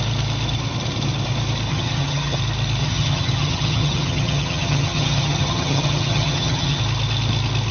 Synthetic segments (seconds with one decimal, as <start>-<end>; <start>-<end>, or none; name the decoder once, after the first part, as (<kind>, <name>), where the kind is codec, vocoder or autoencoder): 1.7-2.4 (vocoder, HiFi-GAN); 2.8-6.8